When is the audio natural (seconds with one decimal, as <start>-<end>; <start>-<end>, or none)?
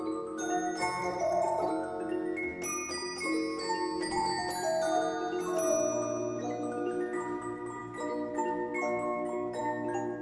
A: 0.0-1.0; 1.7-10.2